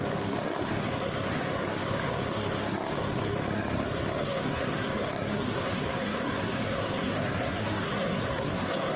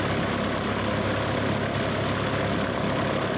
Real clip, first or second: second